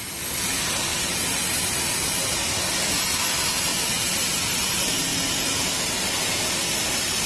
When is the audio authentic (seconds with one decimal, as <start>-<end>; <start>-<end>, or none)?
0.0-3.7; 4.2-7.3